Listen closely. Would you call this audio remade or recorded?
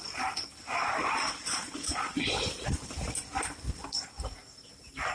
recorded